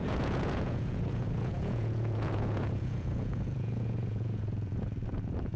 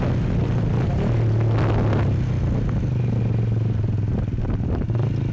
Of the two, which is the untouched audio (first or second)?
second